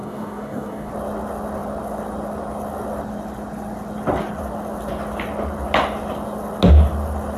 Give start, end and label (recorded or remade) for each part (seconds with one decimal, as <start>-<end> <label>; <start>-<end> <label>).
0.0-0.9 remade; 0.9-7.4 recorded